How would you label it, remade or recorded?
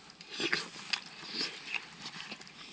recorded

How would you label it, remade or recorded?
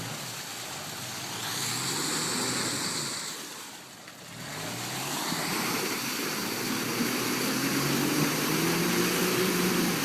recorded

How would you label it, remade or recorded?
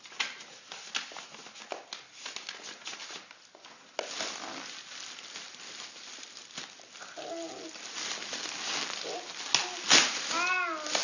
recorded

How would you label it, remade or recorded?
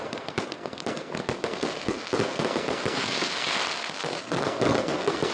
remade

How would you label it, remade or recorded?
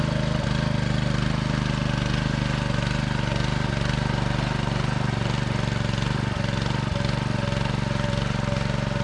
recorded